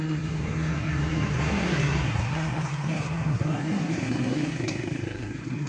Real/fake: fake